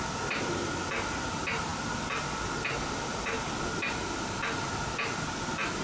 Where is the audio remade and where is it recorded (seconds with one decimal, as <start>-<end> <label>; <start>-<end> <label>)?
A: 0.0-5.8 recorded